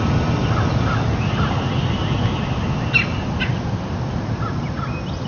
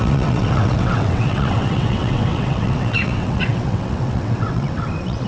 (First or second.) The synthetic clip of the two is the second